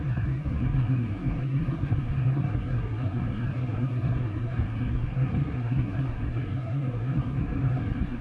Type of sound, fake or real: fake